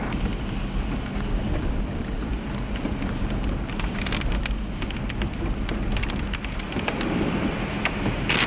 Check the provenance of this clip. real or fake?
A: real